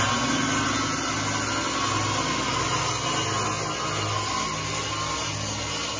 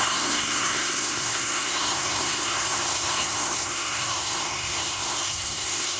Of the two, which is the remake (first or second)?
second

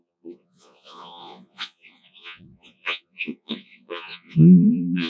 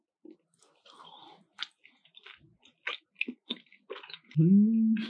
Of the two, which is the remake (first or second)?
first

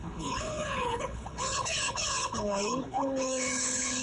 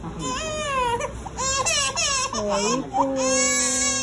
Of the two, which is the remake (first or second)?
first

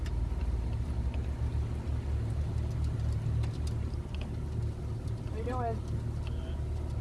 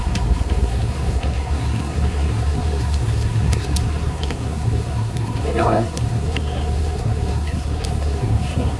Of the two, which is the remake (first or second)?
second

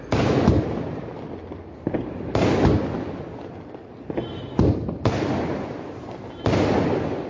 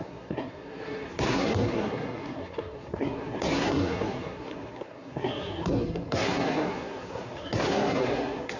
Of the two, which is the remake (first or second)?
second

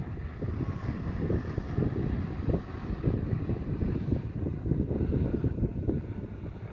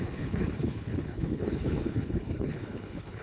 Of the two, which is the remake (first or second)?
second